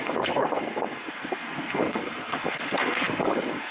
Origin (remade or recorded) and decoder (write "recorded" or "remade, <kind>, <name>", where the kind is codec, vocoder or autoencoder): remade, codec, SNAC